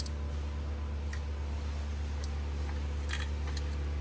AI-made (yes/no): no